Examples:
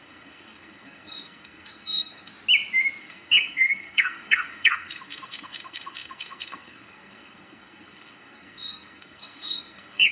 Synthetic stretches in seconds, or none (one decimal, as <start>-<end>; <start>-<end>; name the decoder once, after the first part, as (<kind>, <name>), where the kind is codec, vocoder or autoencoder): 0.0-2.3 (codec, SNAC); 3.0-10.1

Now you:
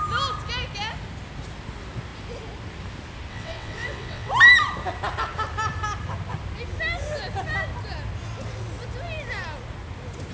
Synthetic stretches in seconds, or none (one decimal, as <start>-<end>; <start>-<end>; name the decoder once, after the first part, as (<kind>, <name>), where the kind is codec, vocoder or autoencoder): 3.3-4.3 (vocoder, WaveNeXt)

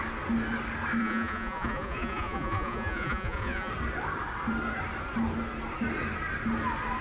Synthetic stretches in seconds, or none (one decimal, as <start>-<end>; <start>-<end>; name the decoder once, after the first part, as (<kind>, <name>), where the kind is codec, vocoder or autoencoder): 1.0-3.7 (vocoder, Vocos)